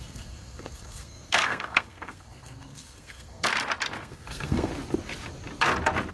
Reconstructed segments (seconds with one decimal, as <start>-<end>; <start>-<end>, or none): 0.0-3.5; 4.0-4.7